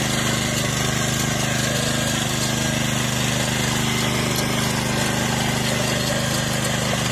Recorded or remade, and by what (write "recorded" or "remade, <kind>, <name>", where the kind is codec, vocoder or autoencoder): recorded